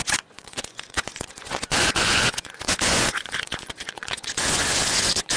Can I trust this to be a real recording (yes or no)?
no